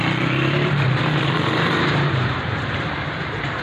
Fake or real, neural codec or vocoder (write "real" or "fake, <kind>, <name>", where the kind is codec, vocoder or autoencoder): fake, vocoder, BigVGAN v2